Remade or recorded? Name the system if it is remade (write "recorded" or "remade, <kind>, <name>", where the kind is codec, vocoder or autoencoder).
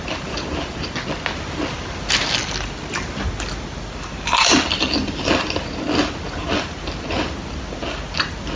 recorded